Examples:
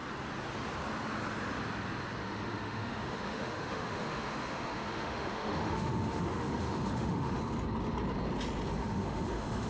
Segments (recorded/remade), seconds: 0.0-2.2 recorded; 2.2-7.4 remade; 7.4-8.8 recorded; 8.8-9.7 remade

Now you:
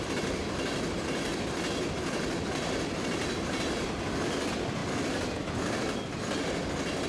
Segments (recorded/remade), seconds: 0.0-7.1 recorded

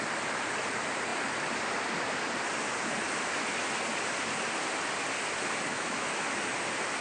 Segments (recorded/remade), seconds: 0.0-5.7 recorded; 5.7-6.3 remade; 6.3-7.0 recorded

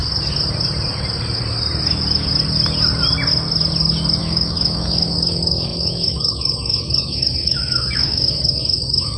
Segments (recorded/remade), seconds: 0.0-4.2 recorded; 4.2-9.2 remade

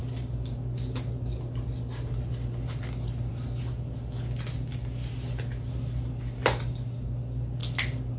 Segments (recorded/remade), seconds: 0.0-8.2 recorded

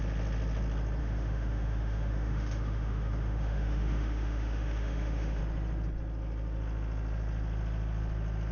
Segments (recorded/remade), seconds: 0.0-1.0 recorded; 1.0-5.4 remade; 5.4-8.5 recorded